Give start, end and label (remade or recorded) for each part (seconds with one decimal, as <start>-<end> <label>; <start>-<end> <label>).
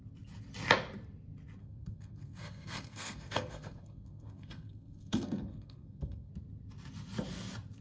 0.0-1.6 recorded; 1.6-6.3 remade; 6.3-7.8 recorded